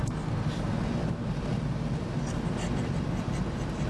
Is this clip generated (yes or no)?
no